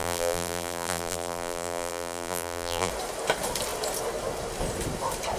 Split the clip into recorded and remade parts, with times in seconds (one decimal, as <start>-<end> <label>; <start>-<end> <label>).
0.0-2.9 remade; 2.9-5.4 recorded